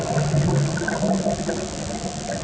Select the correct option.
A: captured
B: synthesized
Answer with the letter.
A